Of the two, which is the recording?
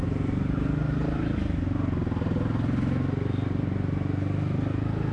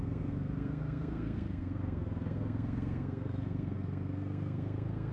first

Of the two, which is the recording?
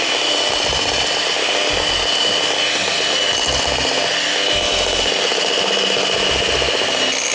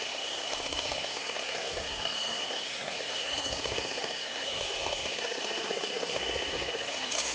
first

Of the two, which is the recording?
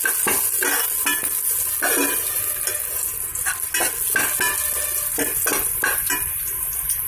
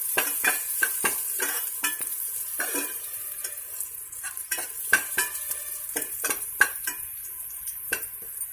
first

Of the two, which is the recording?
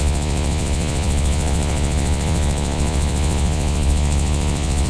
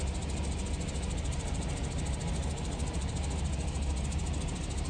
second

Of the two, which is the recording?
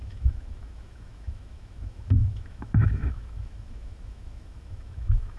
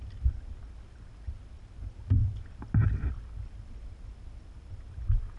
second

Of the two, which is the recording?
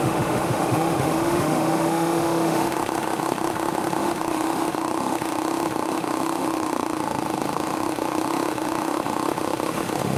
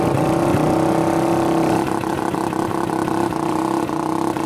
second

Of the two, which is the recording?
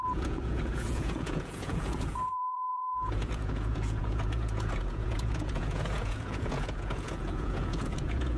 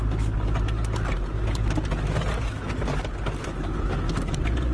second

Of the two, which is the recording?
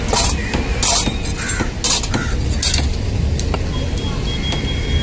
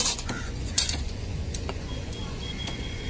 first